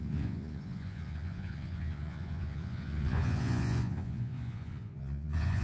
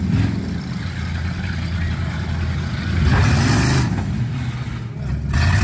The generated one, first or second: first